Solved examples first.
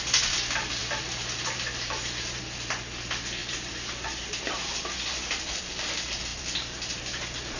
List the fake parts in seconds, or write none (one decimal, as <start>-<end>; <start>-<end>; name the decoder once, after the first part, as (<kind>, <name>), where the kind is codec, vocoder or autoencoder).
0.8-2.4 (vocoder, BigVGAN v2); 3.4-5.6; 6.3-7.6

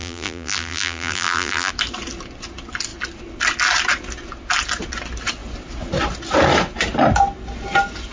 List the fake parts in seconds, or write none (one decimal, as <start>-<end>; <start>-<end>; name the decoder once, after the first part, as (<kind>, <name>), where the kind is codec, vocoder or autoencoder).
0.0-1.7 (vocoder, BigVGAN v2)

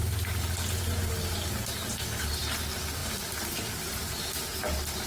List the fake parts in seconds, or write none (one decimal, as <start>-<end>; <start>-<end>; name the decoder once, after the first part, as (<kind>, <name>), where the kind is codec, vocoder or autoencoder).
0.0-1.1 (vocoder, BigVGAN v2); 3.0-5.1

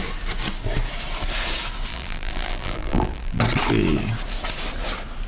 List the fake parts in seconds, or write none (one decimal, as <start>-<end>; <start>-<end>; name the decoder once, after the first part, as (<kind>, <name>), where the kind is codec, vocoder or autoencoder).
1.9-3.4 (vocoder, BigVGAN v2)

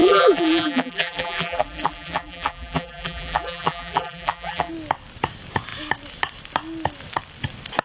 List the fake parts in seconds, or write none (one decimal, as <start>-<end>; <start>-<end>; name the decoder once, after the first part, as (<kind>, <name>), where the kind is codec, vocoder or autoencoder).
0.0-4.7 (vocoder, BigVGAN v2)